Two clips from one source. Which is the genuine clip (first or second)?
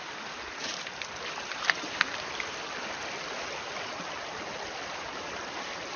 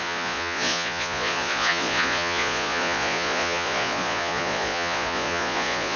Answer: first